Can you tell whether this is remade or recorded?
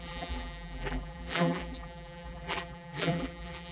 remade